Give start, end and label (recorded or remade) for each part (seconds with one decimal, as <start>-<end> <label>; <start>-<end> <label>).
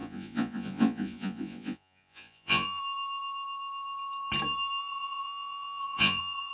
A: 0.0-2.8 remade; 2.8-4.8 recorded; 4.8-6.5 remade